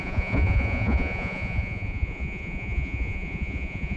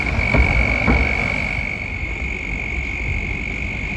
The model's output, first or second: first